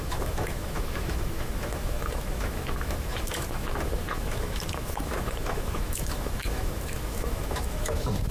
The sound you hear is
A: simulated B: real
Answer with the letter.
A